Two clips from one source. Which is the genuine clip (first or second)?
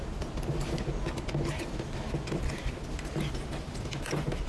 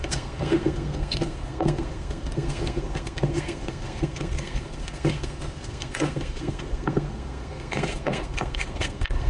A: first